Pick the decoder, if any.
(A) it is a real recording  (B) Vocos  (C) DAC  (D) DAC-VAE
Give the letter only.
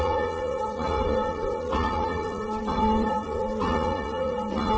B